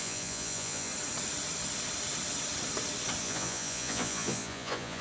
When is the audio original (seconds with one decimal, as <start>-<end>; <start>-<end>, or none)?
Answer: 0.9-3.2